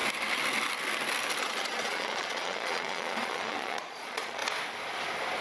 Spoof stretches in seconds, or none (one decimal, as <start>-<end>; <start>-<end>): 1.4-4.4